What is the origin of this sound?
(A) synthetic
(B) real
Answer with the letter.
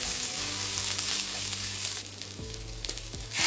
A